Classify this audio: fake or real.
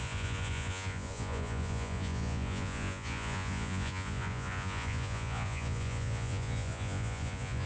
fake